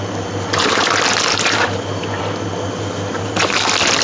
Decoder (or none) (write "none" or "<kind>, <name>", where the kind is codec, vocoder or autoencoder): none